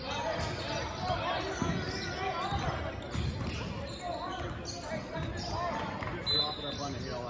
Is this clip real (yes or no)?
yes